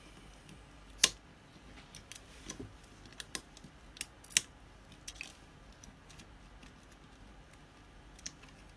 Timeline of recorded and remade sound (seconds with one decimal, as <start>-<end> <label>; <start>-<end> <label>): 0.0-8.8 recorded